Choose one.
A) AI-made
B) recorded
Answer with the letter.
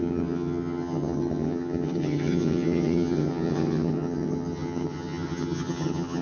A